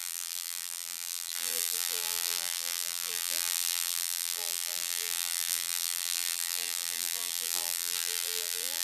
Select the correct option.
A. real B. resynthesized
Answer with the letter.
B